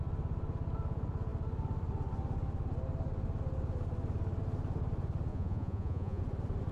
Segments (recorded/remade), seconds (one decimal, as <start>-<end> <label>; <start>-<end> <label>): 0.0-5.3 recorded; 5.3-6.2 remade; 6.2-6.7 recorded